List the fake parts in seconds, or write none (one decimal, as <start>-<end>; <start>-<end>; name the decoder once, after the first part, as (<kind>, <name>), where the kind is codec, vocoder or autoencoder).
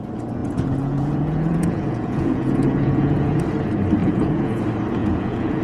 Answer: 0.4-3.4 (vocoder, Vocos); 4.0-4.6; 5.0-5.6